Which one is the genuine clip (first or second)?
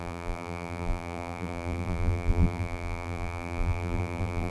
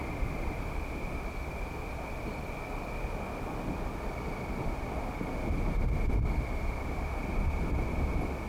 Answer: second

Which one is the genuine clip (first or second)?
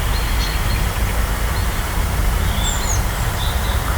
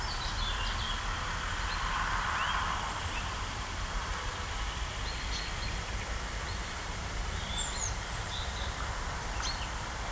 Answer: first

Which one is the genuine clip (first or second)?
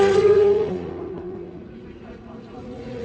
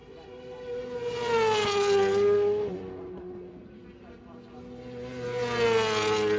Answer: second